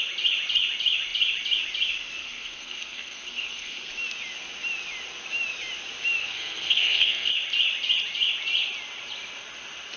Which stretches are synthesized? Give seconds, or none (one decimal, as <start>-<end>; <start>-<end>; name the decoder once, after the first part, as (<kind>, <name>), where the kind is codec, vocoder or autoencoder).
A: 2.2-3.9 (codec, SNAC); 6.2-7.3